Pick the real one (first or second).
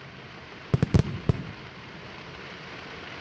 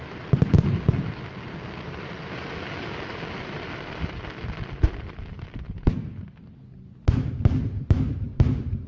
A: second